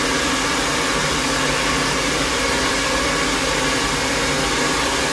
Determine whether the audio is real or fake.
real